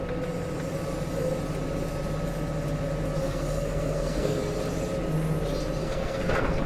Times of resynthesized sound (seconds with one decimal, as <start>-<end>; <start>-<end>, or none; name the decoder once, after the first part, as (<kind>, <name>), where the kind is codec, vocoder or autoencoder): 3.2-4.4 (codec, SNAC); 5.8-6.7